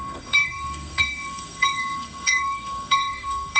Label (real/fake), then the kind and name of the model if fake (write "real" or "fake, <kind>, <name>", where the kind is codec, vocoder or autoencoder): fake, codec, SNAC